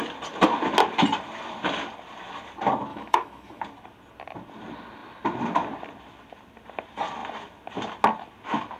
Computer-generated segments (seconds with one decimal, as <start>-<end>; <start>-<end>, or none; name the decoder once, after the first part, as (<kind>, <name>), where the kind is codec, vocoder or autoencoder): 2.9-3.6 (autoencoder, DAC-VAE)